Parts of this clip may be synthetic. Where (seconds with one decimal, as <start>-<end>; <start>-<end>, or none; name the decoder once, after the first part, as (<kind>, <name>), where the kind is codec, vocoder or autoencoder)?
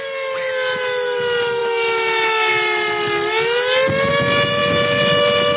4.6-5.6 (vocoder, BigVGAN v2)